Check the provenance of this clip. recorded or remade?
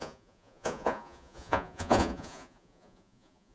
remade